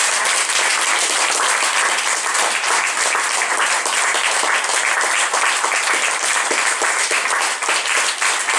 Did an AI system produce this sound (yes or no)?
no